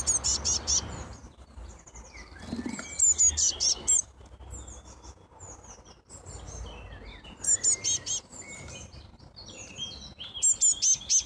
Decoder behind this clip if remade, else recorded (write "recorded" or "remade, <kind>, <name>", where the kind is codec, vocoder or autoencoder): recorded